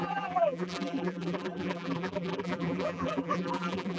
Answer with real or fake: fake